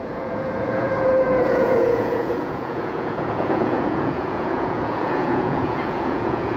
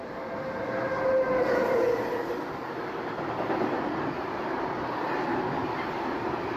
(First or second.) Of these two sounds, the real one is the second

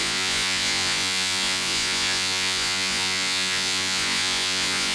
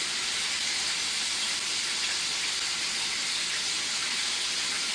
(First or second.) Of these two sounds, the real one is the second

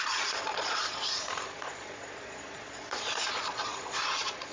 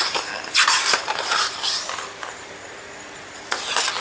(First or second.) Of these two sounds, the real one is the second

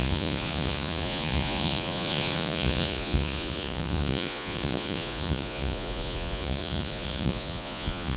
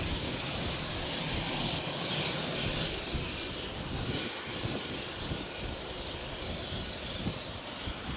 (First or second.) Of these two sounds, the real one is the second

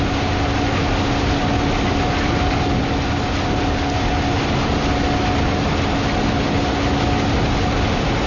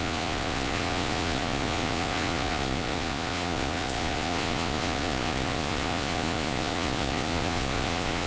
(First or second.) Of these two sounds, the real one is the first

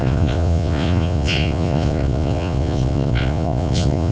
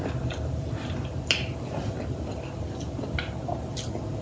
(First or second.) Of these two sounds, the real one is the second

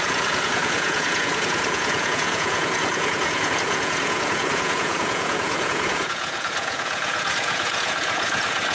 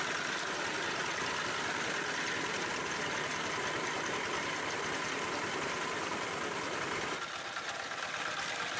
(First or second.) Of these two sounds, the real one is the second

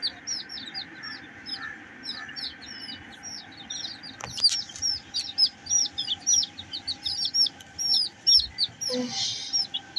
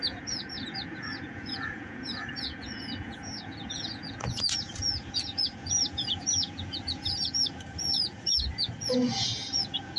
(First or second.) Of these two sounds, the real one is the first